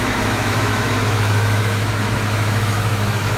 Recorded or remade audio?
remade